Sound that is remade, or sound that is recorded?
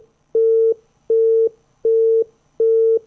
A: recorded